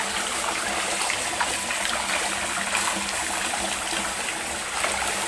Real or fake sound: real